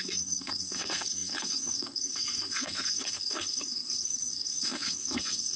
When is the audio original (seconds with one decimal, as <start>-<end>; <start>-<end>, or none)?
none